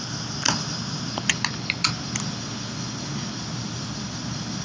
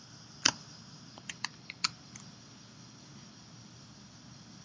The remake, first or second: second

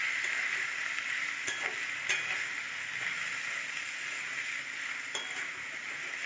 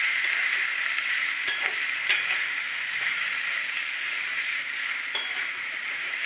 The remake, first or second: second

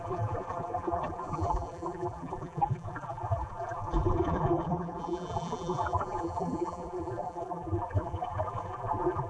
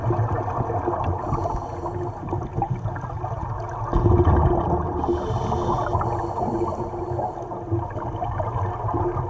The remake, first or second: first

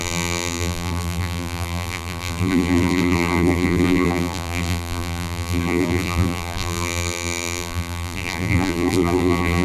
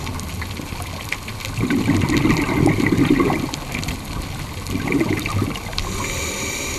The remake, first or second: first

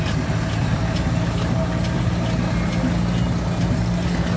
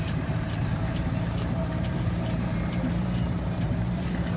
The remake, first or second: second